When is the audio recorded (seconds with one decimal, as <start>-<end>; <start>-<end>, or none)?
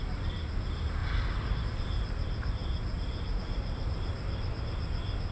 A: 0.0-5.3